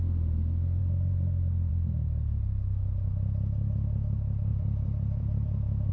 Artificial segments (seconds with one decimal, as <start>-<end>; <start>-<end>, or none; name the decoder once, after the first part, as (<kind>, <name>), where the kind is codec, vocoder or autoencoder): 0.8-1.7 (vocoder, BigVGAN v2); 4.5-5.9